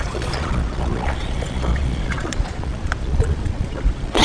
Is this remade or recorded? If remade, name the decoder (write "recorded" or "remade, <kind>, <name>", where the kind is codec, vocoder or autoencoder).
remade, vocoder, Vocos